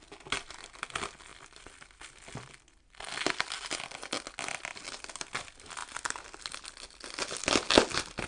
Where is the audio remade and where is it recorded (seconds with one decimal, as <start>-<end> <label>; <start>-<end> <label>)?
0.0-8.3 recorded